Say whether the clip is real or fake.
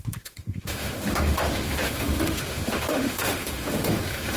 fake